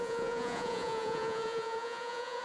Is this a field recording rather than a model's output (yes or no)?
no